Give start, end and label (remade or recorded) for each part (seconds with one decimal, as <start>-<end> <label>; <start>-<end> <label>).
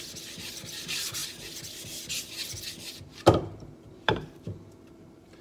0.0-1.2 remade; 1.2-2.9 recorded; 2.9-5.4 remade